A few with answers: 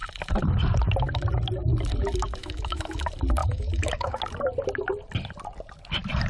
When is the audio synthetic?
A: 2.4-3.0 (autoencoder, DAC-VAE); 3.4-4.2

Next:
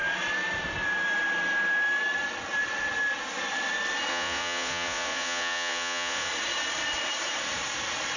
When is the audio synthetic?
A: 4.1-6.3 (vocoder, Vocos)